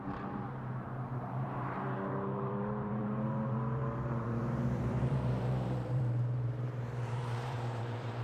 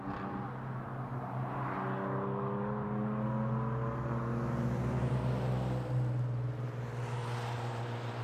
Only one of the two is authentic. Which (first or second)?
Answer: second